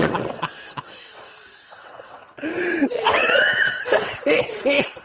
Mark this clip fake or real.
fake